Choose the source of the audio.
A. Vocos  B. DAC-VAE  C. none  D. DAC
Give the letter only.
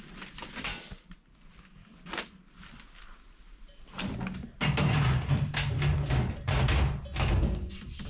C